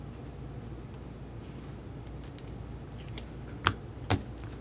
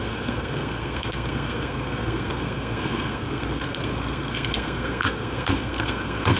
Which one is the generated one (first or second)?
second